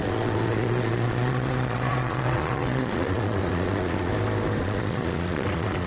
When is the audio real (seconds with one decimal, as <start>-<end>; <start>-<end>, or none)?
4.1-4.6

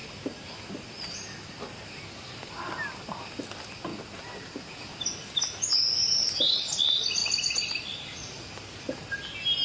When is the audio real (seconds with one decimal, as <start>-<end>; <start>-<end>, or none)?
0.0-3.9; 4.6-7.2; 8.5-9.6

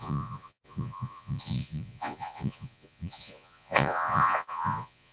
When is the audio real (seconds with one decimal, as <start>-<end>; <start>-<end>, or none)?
none

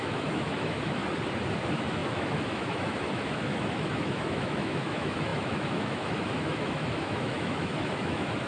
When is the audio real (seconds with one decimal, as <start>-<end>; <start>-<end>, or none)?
1.0-1.6

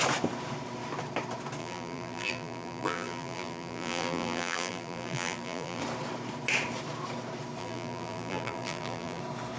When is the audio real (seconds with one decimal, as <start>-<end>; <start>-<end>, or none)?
0.0-1.6; 5.8-7.6; 9.2-9.6